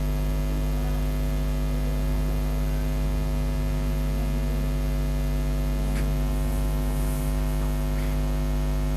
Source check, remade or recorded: recorded